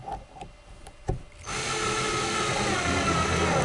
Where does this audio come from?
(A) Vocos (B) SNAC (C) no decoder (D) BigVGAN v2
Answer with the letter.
C